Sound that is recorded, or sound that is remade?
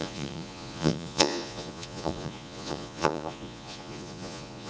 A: remade